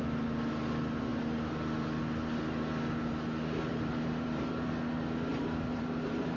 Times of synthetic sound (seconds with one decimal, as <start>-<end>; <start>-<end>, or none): 3.7-4.7; 5.3-6.4